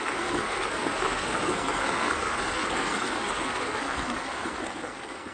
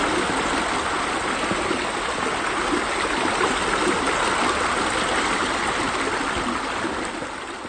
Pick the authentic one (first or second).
second